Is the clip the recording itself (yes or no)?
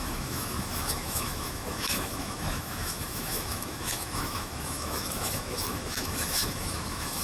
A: no